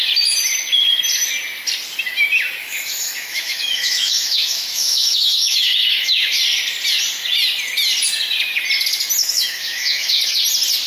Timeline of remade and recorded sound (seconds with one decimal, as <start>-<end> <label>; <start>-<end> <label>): 0.0-2.6 recorded; 2.6-6.4 remade; 6.4-9.2 recorded; 9.2-10.2 remade; 10.2-10.9 recorded